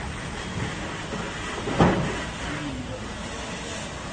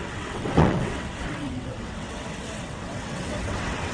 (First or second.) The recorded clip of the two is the first